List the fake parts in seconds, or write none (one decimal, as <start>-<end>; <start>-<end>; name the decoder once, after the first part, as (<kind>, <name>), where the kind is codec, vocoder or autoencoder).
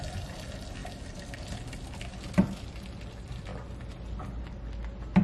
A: none